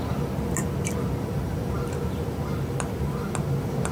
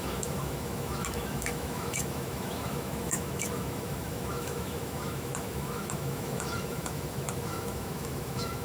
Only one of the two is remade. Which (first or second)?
second